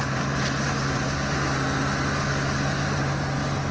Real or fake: real